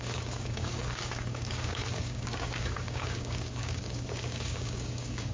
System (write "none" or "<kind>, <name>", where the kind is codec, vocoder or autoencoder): codec, DAC